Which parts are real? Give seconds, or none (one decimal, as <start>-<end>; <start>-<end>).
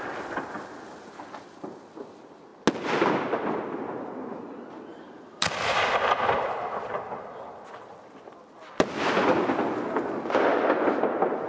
0.0-11.5